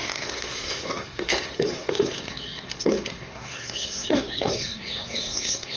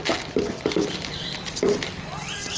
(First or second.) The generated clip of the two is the first